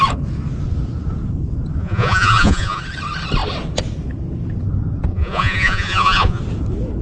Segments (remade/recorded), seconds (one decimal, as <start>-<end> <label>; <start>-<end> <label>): 0.0-1.8 recorded; 1.8-2.8 remade; 2.8-5.1 recorded; 5.1-6.4 remade; 6.4-7.0 recorded